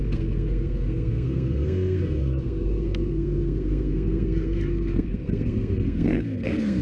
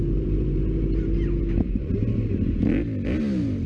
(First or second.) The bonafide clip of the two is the second